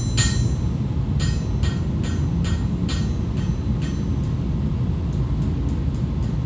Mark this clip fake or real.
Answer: real